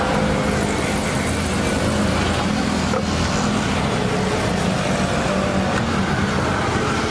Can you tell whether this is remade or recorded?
recorded